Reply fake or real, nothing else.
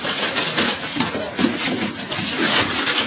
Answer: fake